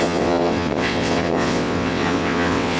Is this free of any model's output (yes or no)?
no